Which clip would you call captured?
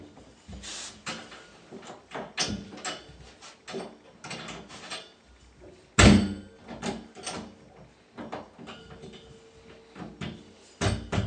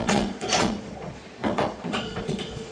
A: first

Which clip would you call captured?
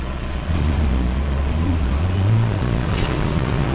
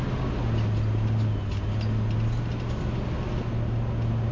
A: second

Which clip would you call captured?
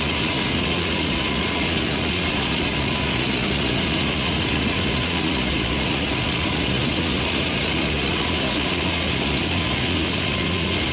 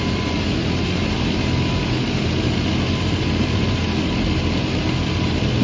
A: second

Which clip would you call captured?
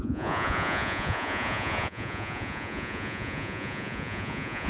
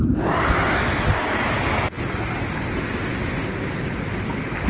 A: second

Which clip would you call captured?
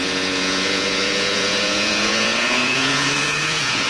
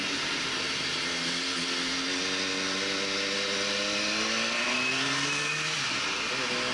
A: second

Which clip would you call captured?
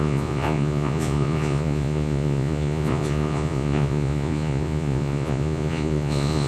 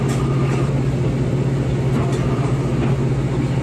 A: second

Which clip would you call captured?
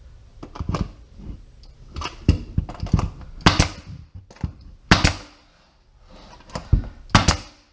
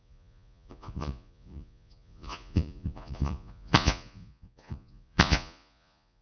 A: first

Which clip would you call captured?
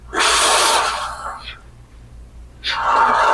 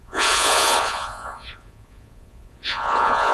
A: first